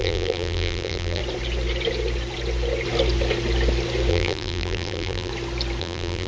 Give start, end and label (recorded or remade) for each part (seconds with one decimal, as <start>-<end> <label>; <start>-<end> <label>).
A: 0.0-1.2 remade; 1.2-4.1 recorded; 4.1-5.3 remade; 5.3-5.8 recorded; 5.8-6.3 remade